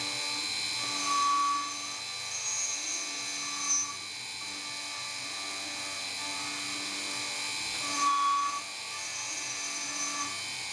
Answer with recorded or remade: recorded